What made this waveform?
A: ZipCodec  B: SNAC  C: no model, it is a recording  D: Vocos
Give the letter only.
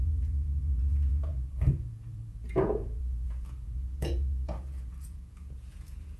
D